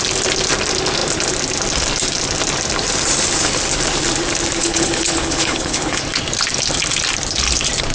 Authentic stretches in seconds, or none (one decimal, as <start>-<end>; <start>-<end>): 0.0-4.6; 6.0-7.9